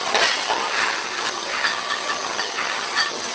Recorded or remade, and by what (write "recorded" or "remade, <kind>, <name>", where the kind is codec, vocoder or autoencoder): remade, vocoder, HiFi-GAN